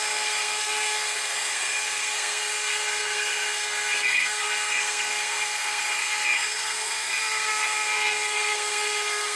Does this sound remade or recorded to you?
remade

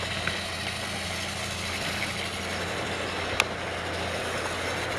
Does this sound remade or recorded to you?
recorded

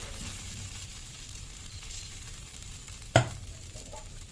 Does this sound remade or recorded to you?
remade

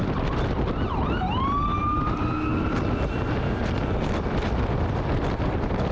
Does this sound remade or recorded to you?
recorded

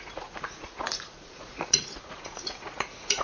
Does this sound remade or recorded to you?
remade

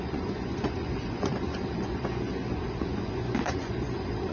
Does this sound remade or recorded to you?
remade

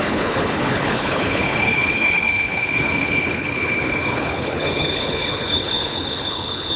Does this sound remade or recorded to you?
remade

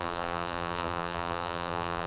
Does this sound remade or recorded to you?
remade